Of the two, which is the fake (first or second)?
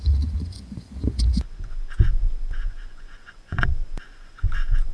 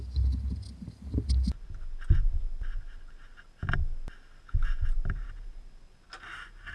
first